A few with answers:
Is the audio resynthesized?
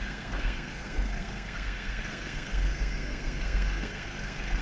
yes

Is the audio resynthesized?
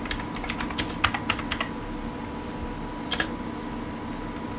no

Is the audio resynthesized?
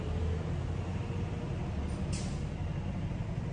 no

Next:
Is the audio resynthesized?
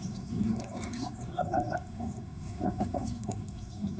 yes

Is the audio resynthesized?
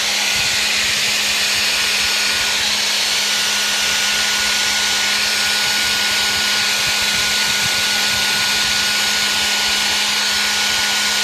no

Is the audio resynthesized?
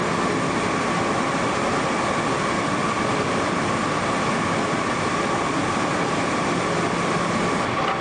no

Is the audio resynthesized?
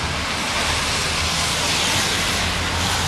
no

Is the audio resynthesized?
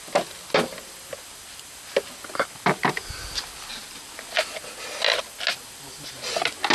no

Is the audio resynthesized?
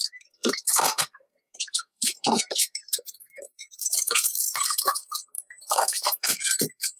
yes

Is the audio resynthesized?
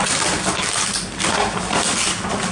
no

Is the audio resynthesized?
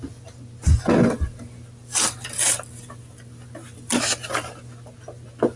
no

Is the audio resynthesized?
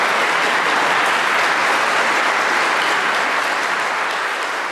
no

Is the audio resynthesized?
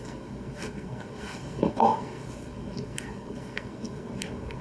yes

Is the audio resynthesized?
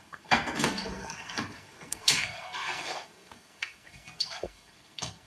yes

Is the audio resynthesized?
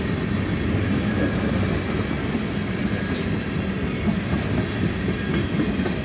no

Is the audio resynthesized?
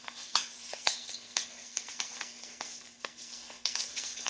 yes